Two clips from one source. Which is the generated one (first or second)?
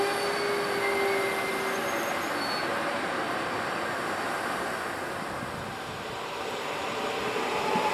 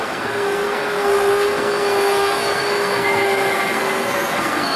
second